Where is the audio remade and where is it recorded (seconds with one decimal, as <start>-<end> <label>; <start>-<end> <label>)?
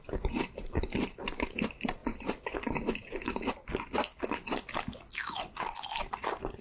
0.0-2.0 remade; 2.0-6.0 recorded; 6.0-6.6 remade